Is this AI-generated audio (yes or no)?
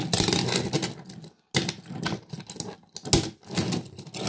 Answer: no